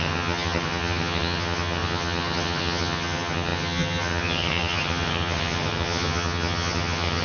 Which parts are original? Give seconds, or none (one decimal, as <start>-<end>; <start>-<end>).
none